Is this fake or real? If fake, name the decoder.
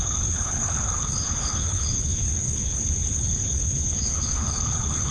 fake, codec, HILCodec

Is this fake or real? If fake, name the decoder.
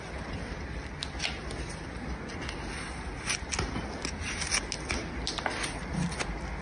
real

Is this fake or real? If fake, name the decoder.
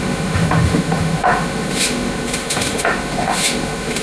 fake, autoencoder, DAC-VAE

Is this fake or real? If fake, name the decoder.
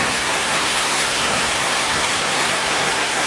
fake, codec, SNAC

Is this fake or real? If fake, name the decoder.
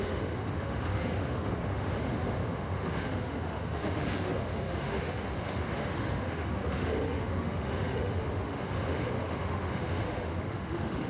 fake, autoencoder, DAC-VAE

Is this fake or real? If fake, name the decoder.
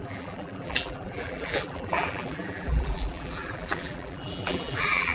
fake, vocoder, BigVGAN v2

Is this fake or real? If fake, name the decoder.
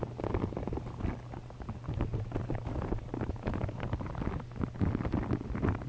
real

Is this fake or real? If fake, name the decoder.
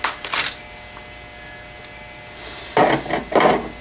real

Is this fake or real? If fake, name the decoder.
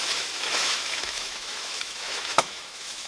fake, autoencoder, DAC-VAE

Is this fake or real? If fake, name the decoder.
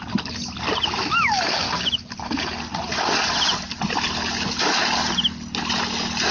real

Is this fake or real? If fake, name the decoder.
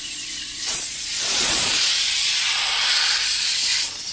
fake, vocoder, Vocos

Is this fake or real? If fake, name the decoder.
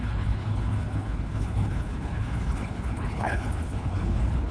fake, codec, HILCodec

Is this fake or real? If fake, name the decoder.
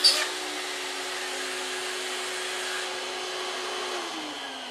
real